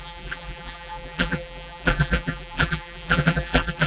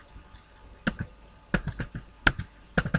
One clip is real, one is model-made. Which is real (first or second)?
second